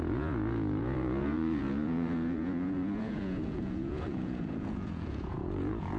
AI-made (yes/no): yes